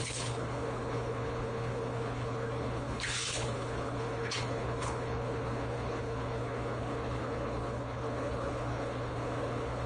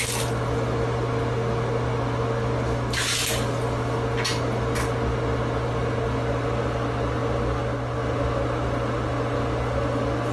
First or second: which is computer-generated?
first